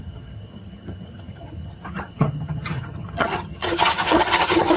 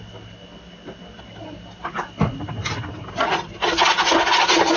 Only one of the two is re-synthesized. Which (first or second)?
first